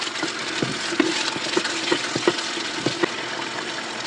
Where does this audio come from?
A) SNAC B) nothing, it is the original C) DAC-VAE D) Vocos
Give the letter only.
B